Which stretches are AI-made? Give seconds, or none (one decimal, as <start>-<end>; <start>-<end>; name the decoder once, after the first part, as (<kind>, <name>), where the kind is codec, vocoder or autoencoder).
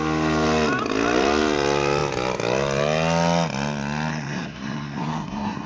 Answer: 4.1-5.7 (codec, SNAC)